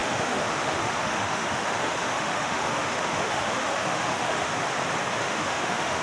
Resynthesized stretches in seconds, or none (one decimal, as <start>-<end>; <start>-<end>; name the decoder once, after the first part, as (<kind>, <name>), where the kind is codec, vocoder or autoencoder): 0.0-4.5 (autoencoder, DAC-VAE); 5.2-6.0

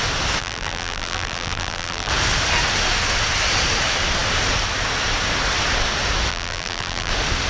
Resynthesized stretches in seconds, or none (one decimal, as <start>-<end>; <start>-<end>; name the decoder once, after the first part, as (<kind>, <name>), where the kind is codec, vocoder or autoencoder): 0.4-2.1 (vocoder, BigVGAN v2); 6.3-7.1

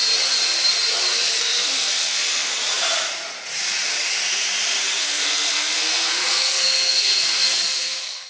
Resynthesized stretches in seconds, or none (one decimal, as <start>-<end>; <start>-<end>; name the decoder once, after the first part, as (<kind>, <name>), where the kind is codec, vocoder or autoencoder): 1.4-2.5 (codec, SNAC); 5.0-8.3

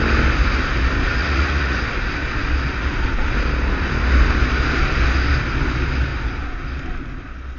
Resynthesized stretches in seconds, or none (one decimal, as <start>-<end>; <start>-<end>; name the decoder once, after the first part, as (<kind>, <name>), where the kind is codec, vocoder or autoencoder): 1.2-1.8 (vocoder, Vocos)

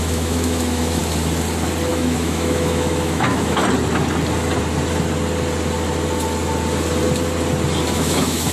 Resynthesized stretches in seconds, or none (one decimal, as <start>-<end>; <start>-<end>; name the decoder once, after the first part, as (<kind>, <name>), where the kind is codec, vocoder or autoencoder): 0.0-1.0 (autoencoder, DAC-VAE); 1.9-3.6; 7.9-8.5

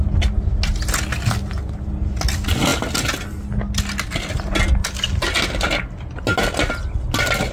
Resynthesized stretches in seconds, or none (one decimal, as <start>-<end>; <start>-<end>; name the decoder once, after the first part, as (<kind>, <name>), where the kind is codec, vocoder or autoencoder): none

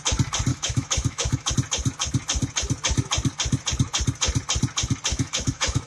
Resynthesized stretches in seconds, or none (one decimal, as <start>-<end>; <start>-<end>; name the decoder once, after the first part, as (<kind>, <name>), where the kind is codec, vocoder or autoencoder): 0.5-1.5 (autoencoder, DAC-VAE); 5.1-5.9

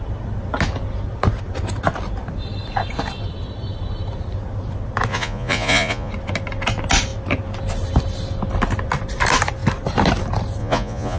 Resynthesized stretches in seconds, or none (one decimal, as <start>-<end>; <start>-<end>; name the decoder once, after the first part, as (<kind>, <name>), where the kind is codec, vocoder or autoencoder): 5.1-6.1 (vocoder, Vocos); 10.6-11.2